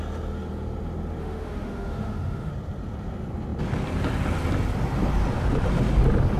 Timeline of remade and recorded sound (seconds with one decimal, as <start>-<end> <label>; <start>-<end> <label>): 0.0-1.2 recorded; 1.2-2.5 remade; 2.5-6.4 recorded